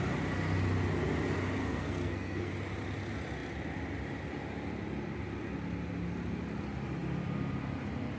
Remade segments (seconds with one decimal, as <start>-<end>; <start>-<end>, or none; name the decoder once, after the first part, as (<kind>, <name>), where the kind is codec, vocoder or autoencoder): 1.6-2.5 (codec, SNAC)